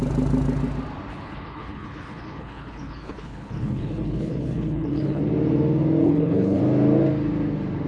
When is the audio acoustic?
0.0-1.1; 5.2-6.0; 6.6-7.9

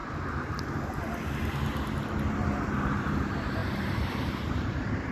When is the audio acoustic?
0.0-3.6

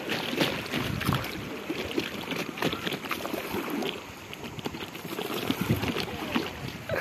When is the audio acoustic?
0.0-7.0

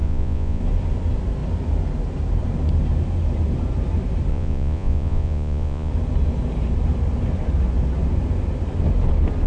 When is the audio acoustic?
0.6-4.3; 5.9-9.5

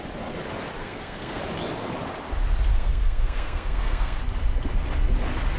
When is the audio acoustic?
0.0-0.8; 1.4-2.7; 4.2-5.6

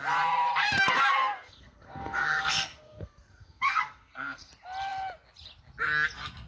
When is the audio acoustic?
0.0-0.6; 4.5-6.5